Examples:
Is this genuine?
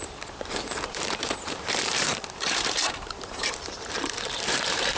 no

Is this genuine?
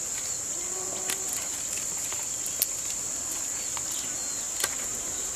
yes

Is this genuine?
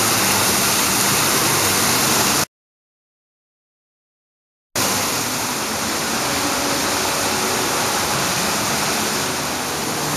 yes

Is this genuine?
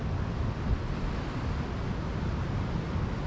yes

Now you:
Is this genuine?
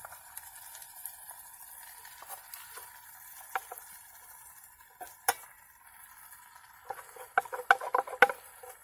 yes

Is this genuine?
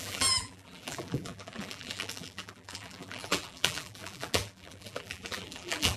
no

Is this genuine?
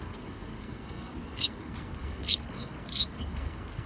no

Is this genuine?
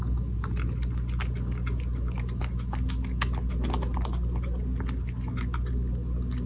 yes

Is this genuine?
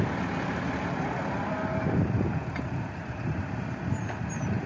yes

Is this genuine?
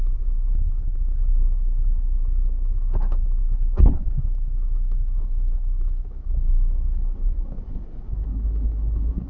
no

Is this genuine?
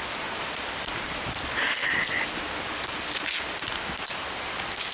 yes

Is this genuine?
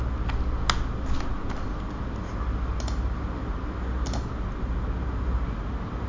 yes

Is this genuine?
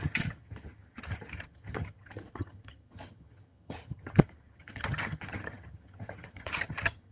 no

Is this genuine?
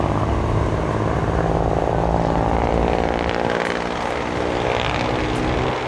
yes